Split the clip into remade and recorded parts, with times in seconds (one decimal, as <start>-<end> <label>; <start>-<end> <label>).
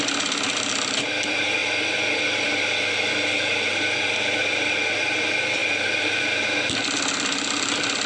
0.0-8.1 recorded